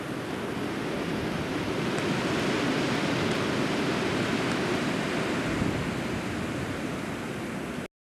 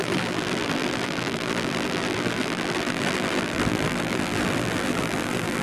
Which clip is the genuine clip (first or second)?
first